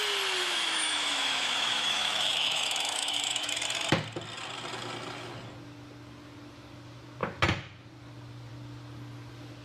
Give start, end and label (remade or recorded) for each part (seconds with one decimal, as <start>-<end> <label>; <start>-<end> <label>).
0.0-0.4 recorded; 0.4-3.5 remade; 3.5-9.6 recorded